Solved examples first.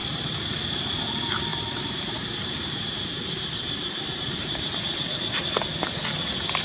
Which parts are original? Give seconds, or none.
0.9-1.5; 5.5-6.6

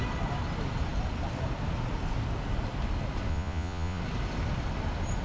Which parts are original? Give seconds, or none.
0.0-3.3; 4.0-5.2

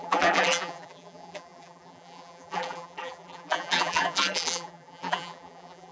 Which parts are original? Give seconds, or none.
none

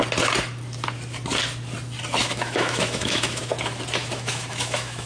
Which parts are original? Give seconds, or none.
0.0-2.2; 3.4-4.0